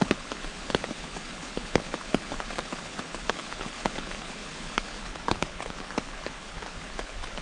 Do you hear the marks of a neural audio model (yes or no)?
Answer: yes